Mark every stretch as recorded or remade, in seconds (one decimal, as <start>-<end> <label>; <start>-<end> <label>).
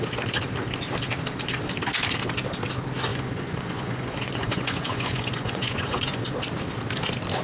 0.0-3.1 recorded; 3.1-6.2 remade; 6.2-7.4 recorded